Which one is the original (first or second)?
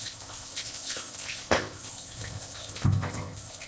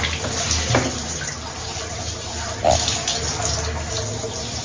second